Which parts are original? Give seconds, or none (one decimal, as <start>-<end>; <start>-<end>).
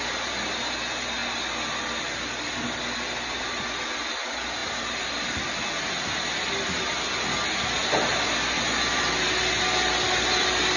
0.0-10.8